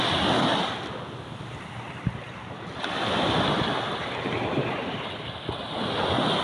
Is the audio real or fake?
real